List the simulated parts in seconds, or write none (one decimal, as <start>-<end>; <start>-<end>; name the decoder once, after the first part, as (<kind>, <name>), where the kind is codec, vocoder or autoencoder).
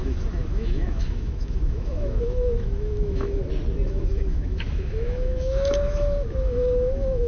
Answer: 0.0-3.4 (autoencoder, DAC-VAE); 3.9-7.3